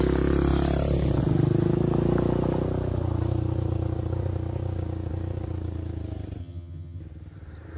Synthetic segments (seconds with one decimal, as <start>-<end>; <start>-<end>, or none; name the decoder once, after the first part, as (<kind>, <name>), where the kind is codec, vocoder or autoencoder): 6.4-7.0 (vocoder, HiFi-GAN)